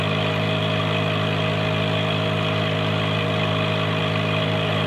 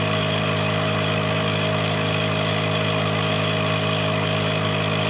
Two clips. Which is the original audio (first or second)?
second